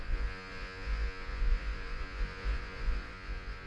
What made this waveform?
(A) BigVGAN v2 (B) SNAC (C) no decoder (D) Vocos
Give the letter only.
D